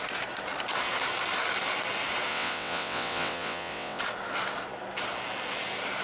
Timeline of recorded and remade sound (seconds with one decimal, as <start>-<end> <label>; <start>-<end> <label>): 0.0-2.3 recorded; 2.3-4.0 remade; 4.0-6.0 recorded